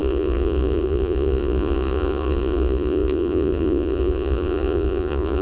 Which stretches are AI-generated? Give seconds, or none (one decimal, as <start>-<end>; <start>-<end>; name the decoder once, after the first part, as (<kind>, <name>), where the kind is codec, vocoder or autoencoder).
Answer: 0.0-5.4 (vocoder, Vocos)